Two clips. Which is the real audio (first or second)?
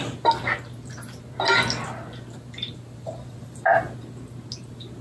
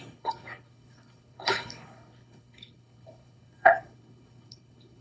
first